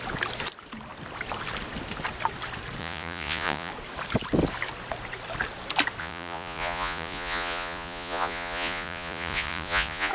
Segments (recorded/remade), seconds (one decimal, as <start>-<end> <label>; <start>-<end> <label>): 0.0-2.8 recorded; 2.8-3.7 remade; 3.7-6.0 recorded; 6.0-10.1 remade